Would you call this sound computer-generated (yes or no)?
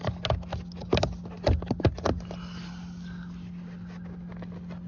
no